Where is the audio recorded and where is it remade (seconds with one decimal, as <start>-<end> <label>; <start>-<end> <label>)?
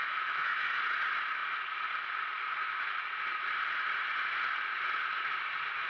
0.0-0.7 remade; 0.7-5.9 recorded